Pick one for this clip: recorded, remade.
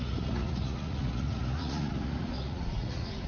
remade